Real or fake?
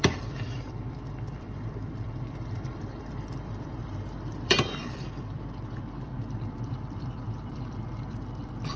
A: fake